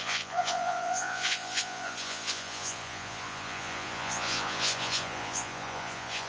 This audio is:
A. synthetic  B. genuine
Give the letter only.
A